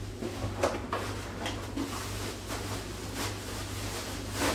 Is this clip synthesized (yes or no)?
no